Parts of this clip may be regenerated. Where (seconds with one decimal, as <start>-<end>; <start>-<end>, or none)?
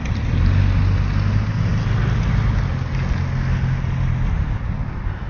none